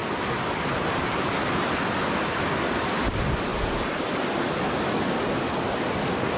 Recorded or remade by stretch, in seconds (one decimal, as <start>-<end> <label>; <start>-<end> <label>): 0.0-6.4 recorded